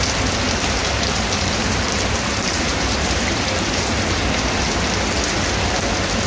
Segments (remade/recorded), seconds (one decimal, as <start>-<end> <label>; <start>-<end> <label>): 0.0-0.8 recorded; 0.8-4.6 remade; 4.6-6.3 recorded